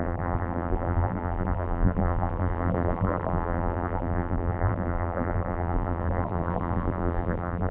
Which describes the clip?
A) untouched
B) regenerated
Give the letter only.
B